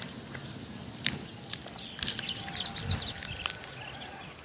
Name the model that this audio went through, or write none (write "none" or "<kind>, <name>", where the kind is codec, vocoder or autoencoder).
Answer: none